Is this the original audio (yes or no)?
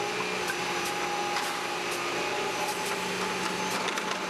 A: yes